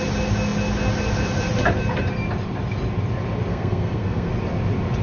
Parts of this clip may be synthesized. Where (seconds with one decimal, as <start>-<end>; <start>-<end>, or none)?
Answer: 3.5-4.3